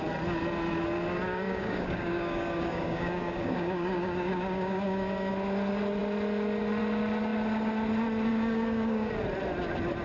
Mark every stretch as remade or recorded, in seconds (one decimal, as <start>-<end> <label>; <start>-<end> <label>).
0.0-1.3 recorded; 1.3-5.3 remade; 5.3-8.3 recorded; 8.3-9.1 remade; 9.1-10.0 recorded

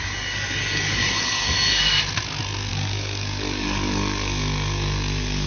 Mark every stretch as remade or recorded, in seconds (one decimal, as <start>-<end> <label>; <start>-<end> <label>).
0.0-2.0 remade; 2.0-2.7 recorded; 2.7-5.5 remade